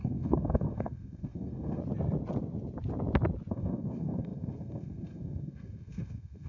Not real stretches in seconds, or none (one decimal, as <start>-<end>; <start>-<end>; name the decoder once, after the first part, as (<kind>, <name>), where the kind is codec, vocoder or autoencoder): 0.0-1.8 (codec, SNAC); 3.5-6.5